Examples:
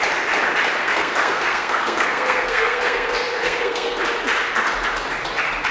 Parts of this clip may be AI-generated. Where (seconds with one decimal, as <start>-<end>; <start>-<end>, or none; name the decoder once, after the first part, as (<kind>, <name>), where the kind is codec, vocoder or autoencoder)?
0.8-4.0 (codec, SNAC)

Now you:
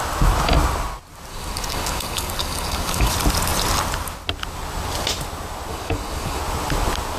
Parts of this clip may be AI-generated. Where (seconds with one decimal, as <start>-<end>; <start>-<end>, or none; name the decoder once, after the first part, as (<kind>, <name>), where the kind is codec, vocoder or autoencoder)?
1.3-3.1 (codec, DAC); 5.7-6.4

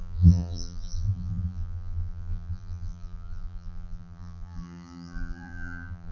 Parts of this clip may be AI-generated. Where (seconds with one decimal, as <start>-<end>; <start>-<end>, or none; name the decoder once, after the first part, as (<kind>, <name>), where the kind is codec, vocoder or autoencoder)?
0.0-6.1 (vocoder, BigVGAN v2)

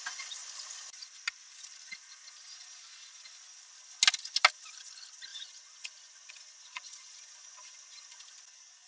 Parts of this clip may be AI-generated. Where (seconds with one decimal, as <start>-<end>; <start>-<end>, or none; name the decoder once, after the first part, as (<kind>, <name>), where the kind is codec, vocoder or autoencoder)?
5.3-8.2 (vocoder, Vocos)

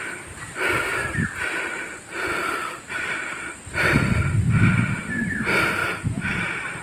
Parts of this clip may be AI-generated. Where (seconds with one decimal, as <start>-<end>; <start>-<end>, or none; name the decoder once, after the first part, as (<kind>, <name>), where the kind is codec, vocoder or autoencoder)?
none

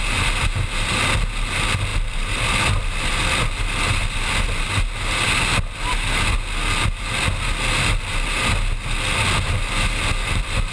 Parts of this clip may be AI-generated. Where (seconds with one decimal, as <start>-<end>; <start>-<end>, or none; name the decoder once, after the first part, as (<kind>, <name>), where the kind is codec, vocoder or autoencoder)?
none

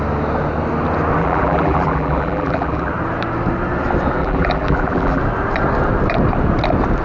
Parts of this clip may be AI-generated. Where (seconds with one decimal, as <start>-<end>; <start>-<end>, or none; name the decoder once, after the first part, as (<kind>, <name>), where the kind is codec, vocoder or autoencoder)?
1.2-2.9 (vocoder, BigVGAN v2); 4.2-5.2

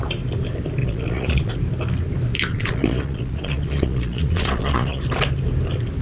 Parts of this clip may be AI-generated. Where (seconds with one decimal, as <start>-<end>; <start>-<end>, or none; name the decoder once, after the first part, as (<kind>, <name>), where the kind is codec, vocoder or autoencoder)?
0.8-1.5 (vocoder, Vocos); 2.5-5.0